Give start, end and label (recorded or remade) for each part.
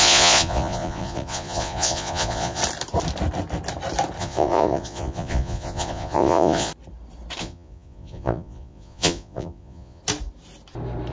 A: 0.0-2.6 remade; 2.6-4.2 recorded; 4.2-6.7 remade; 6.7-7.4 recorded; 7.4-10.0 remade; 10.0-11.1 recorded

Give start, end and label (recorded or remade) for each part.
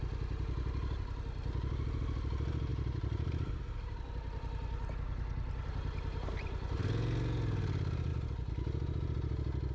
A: 0.0-2.7 recorded; 2.7-6.8 remade; 6.8-9.7 recorded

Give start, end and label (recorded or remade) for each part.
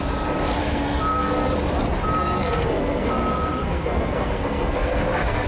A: 0.0-0.6 recorded; 0.6-1.5 remade; 1.5-2.1 recorded; 2.1-5.5 remade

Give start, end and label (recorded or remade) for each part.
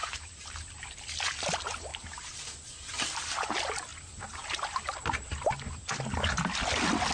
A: 0.0-0.5 remade; 0.5-1.9 recorded; 1.9-2.5 remade; 2.5-3.9 recorded; 3.9-5.3 remade; 5.3-7.1 recorded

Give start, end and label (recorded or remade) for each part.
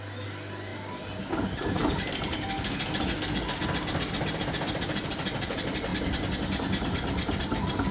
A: 0.0-7.9 recorded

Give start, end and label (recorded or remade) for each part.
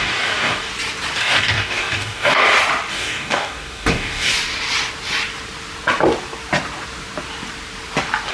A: 0.0-0.7 remade; 0.7-1.2 recorded; 1.2-2.4 remade; 2.4-2.9 recorded; 2.9-4.3 remade; 4.3-8.3 recorded